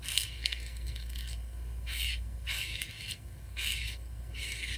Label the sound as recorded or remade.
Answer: remade